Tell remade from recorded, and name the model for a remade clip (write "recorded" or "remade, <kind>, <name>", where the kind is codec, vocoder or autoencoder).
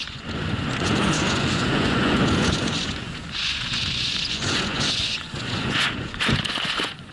remade, vocoder, Vocos